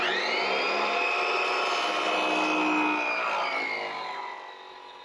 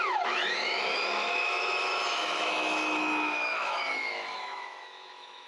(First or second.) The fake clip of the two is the second